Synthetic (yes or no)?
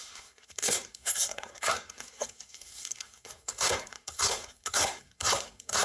yes